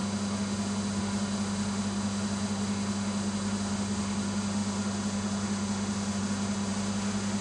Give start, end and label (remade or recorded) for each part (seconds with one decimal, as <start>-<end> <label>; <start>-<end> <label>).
0.0-7.4 recorded